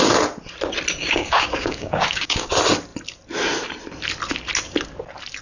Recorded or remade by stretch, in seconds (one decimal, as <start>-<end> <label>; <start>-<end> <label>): 0.0-1.0 recorded; 1.0-2.5 remade; 2.5-5.4 recorded